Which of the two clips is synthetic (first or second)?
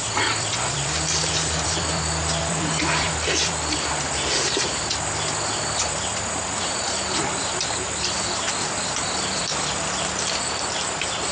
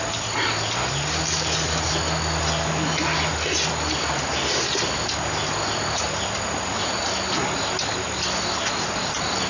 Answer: first